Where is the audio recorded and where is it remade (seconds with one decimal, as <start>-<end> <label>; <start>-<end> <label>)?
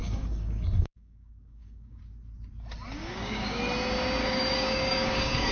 0.0-2.0 remade; 2.0-3.0 recorded; 3.0-3.6 remade; 3.6-4.2 recorded; 4.2-5.5 remade